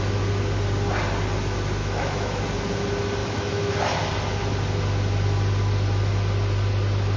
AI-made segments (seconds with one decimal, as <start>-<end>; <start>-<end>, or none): 1.8-2.4; 3.2-3.7